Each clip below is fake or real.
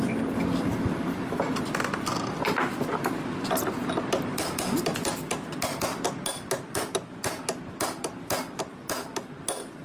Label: real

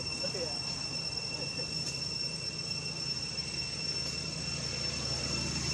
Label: real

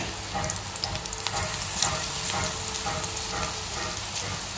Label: real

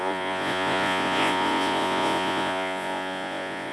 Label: fake